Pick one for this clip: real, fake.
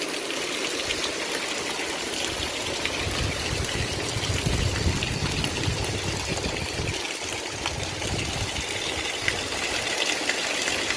real